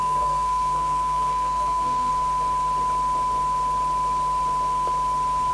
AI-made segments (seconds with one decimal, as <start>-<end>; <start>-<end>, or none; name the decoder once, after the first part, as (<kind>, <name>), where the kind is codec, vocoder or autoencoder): 0.0-2.1 (codec, SNAC)